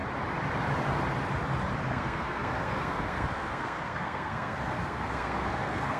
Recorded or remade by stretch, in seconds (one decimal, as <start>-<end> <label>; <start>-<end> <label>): 0.0-1.8 recorded; 1.8-6.0 remade

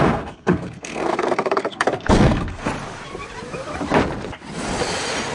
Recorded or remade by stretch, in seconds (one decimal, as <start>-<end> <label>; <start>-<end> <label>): 0.0-2.7 remade; 2.7-5.3 recorded

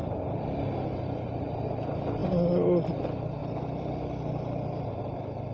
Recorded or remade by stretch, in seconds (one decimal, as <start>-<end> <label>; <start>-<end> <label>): 0.0-5.5 recorded

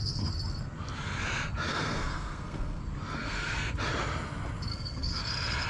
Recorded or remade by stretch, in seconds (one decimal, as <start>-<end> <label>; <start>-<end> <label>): 0.0-1.7 recorded; 1.7-2.8 remade; 2.8-3.2 recorded; 3.2-3.7 remade; 3.7-4.7 recorded; 4.7-5.2 remade; 5.2-5.7 recorded